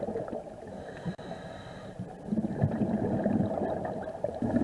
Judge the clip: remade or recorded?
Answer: recorded